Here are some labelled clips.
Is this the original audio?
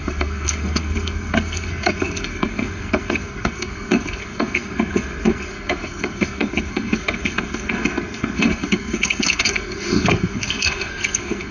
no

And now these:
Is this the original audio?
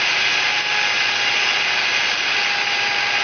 yes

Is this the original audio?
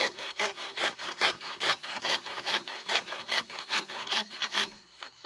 no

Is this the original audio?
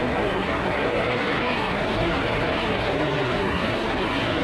no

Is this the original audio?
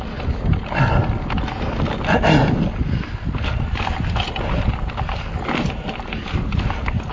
yes